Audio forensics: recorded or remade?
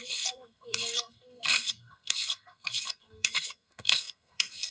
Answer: remade